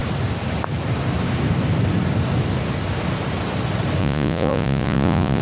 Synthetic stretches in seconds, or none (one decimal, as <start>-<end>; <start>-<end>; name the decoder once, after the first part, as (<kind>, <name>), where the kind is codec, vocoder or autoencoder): 4.0-5.4 (vocoder, Vocos)